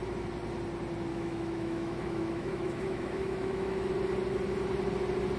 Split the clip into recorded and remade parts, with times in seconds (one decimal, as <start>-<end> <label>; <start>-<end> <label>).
0.0-1.1 recorded; 1.1-3.9 remade; 3.9-5.4 recorded